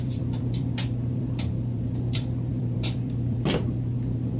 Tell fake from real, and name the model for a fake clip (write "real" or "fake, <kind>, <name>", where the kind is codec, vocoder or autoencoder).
fake, vocoder, BigVGAN v2